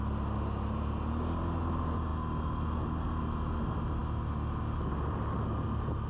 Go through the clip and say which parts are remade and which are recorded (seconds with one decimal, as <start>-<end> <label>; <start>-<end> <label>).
0.0-6.1 recorded